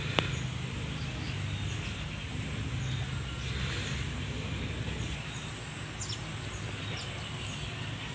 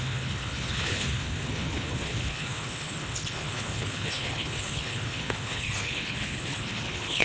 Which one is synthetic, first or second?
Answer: second